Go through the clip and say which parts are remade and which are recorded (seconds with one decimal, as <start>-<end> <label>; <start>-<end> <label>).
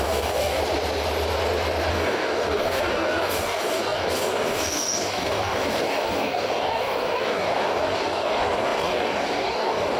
0.0-0.6 remade; 0.6-1.9 recorded; 1.9-10.0 remade